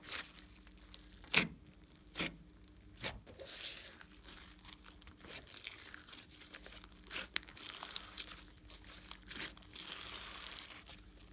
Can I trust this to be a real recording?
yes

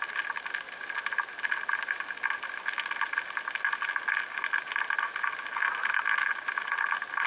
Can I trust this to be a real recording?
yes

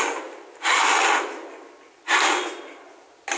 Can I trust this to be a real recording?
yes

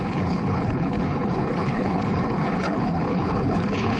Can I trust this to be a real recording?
no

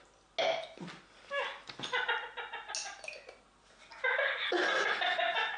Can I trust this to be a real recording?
yes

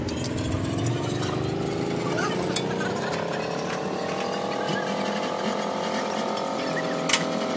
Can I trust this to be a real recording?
yes